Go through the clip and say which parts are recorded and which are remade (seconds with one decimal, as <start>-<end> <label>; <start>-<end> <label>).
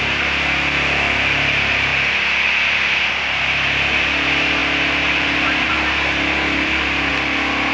0.0-1.9 remade; 1.9-3.3 recorded; 3.3-7.1 remade; 7.1-7.7 recorded